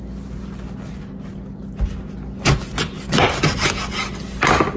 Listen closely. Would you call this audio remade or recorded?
recorded